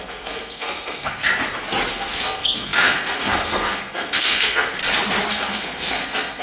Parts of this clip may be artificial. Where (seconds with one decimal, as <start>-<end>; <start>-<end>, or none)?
0.0-1.3; 1.9-4.8; 5.3-6.4